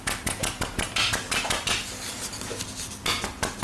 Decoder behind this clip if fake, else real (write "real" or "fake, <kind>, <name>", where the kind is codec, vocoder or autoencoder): real